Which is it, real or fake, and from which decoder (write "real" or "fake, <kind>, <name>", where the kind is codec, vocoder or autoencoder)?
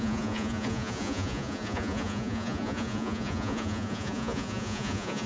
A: fake, vocoder, Vocos